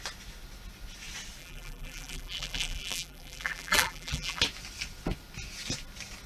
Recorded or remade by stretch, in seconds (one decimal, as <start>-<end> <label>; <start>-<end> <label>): 0.0-1.4 recorded; 1.4-4.4 remade; 4.4-6.3 recorded